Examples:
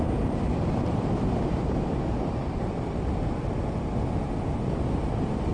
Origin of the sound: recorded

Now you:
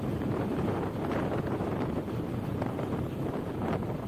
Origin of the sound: remade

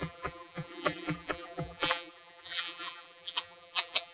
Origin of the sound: remade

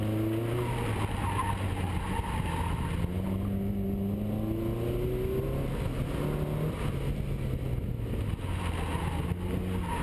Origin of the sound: recorded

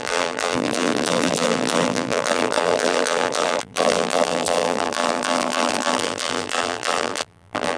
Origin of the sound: remade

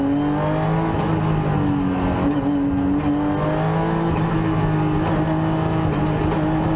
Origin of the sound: recorded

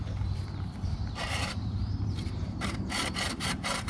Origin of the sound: remade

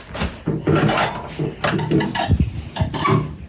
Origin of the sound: recorded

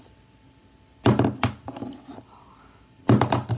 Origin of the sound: recorded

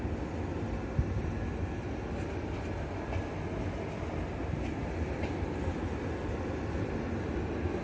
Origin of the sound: recorded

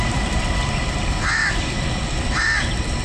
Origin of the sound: remade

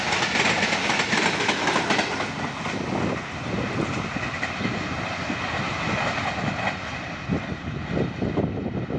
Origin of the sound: recorded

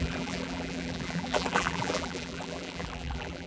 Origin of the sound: remade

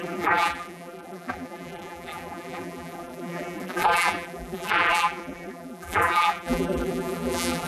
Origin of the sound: remade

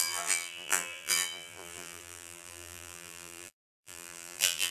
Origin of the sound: remade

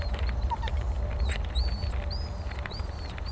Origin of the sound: remade